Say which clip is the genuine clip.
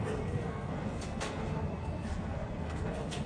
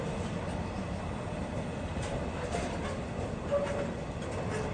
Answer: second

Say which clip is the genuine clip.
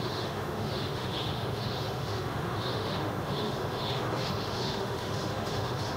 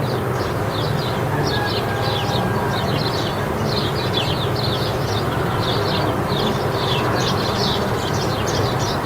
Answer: second